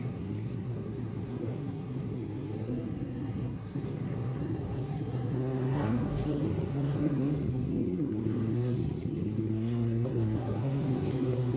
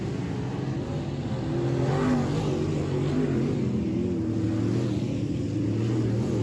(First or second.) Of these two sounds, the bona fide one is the second